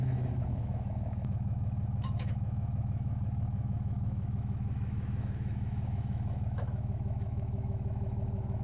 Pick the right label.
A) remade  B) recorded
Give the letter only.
A